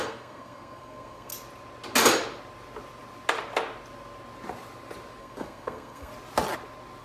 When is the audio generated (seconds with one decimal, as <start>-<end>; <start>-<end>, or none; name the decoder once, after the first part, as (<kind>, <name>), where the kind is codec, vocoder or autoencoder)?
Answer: 0.0-1.3 (codec, SNAC); 5.2-6.1